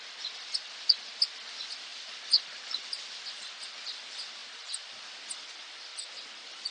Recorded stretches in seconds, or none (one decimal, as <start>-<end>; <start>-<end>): 0.0-6.7